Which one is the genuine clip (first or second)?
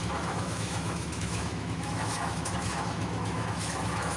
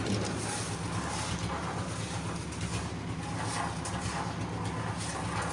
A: second